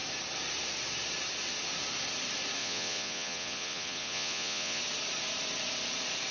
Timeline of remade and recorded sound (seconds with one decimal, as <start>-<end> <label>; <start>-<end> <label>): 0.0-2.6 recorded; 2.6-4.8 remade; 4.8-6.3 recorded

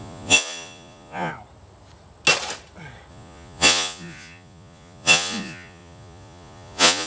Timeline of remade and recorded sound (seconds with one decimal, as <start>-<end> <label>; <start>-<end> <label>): 0.0-1.3 remade; 1.3-3.1 recorded; 3.1-7.1 remade

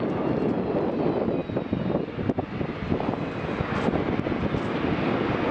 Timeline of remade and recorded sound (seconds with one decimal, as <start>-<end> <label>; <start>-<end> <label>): 0.0-5.5 recorded

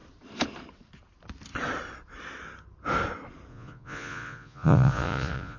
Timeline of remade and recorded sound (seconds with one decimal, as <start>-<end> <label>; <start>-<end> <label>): 0.0-3.5 recorded; 3.5-5.6 remade

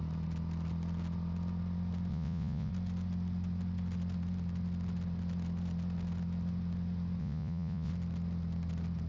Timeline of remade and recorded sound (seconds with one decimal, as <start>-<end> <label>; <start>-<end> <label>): 0.0-2.1 recorded; 2.1-2.7 remade; 2.7-7.2 recorded; 7.2-7.9 remade; 7.9-9.1 recorded

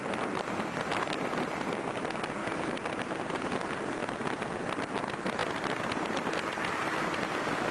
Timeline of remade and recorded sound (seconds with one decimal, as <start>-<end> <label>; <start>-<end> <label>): 0.0-7.7 recorded

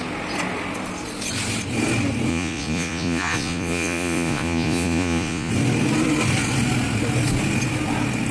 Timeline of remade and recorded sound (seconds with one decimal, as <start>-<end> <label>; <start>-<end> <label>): 0.0-2.3 recorded; 2.3-5.5 remade; 5.5-8.3 recorded